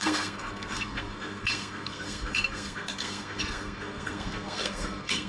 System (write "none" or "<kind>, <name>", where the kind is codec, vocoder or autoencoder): codec, SNAC